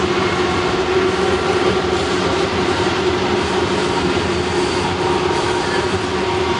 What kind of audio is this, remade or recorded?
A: recorded